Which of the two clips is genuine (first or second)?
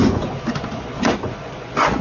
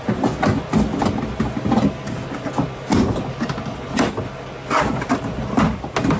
second